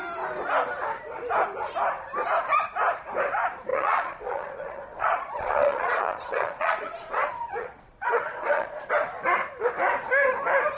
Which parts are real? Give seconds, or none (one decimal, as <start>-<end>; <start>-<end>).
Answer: 0.0-3.7; 8.9-10.8